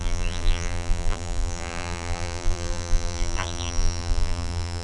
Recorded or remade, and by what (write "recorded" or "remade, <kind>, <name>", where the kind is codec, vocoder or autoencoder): remade, vocoder, BigVGAN v2